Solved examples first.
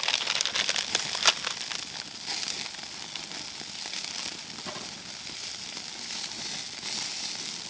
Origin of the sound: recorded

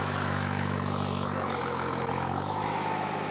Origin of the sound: remade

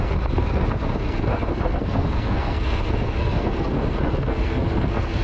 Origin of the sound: remade